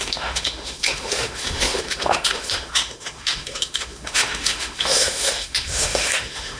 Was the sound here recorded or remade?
remade